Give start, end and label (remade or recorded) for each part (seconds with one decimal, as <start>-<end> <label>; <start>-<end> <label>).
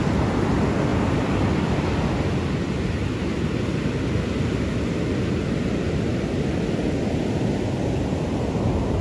0.0-9.0 recorded